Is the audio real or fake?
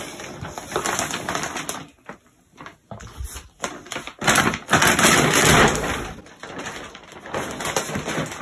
real